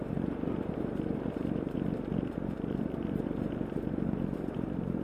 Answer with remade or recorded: remade